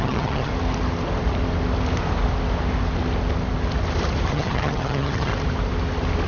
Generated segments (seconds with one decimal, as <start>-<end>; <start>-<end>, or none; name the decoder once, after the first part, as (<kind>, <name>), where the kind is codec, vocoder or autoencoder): 0.0-0.5 (vocoder, HiFi-GAN); 4.3-5.3